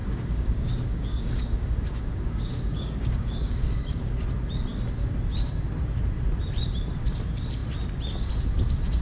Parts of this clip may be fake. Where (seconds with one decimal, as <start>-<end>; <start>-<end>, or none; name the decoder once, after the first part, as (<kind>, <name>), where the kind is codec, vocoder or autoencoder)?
0.0-4.1 (codec, DAC)